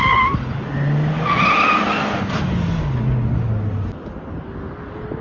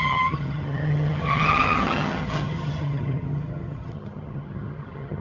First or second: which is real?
first